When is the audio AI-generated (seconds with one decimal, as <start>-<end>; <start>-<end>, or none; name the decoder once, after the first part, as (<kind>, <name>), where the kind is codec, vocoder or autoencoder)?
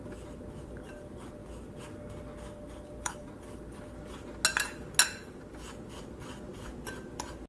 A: none